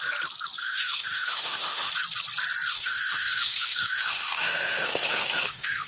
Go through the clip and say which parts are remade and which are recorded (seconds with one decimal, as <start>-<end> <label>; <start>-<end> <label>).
0.0-0.6 recorded; 0.6-1.9 remade; 1.9-2.7 recorded; 2.7-5.9 remade